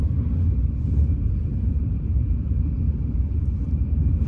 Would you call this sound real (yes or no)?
no